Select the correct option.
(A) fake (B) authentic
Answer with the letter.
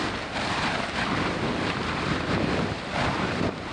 A